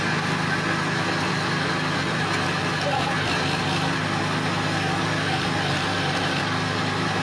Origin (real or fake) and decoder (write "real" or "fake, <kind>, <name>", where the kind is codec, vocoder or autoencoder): real